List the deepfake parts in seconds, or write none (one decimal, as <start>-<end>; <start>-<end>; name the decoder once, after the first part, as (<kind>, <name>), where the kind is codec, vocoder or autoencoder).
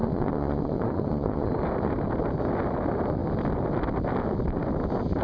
0.0-1.5 (vocoder, Vocos)